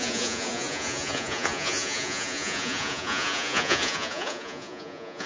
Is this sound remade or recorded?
remade